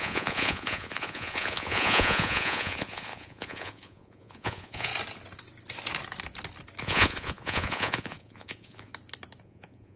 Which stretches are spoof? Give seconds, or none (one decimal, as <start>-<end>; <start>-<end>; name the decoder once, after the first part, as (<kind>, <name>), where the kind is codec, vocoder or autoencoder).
0.0-4.9 (vocoder, Vocos); 6.8-8.9; 9.4-10.0